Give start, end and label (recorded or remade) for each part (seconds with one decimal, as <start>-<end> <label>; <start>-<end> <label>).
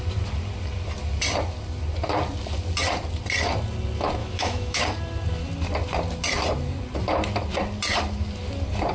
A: 0.0-4.2 recorded; 4.2-4.8 remade; 4.8-8.9 recorded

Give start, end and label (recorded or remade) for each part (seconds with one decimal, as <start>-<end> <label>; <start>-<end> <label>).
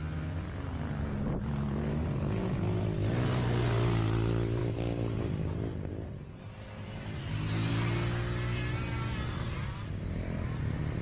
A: 0.0-11.0 recorded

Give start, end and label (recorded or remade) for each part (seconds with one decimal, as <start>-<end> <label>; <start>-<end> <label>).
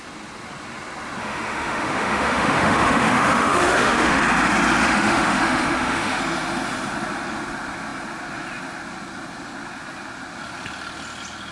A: 0.0-1.2 recorded; 1.2-4.2 remade; 4.2-4.8 recorded; 4.8-6.2 remade; 6.2-11.5 recorded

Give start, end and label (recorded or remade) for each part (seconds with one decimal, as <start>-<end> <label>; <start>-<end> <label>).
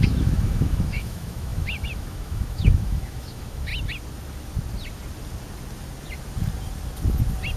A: 0.0-3.7 remade; 3.7-7.6 recorded